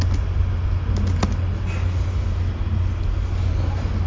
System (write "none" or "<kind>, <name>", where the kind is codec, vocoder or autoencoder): none